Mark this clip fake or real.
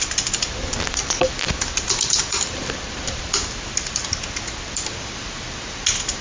real